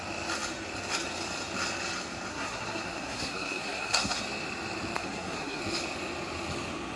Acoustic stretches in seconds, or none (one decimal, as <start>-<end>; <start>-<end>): 0.0-2.3; 4.2-5.0; 5.6-7.0